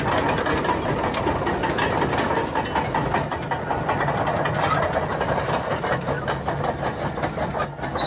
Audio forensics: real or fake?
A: real